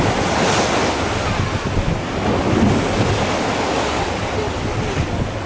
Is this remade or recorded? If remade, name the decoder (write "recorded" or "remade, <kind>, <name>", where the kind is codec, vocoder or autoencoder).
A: recorded